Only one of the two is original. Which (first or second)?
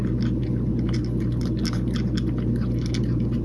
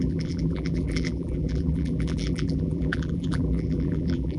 first